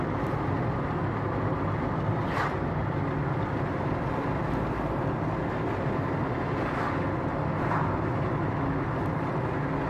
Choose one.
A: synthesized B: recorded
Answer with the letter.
B